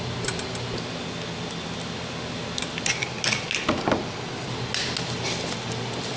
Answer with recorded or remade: recorded